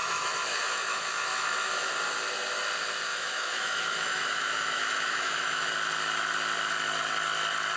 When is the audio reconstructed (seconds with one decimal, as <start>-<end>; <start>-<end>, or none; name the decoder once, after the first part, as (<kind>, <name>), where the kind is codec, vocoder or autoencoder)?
0.0-1.9 (autoencoder, DAC-VAE); 3.1-5.7